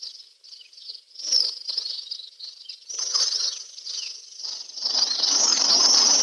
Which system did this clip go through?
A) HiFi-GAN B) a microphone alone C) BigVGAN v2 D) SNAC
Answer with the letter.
B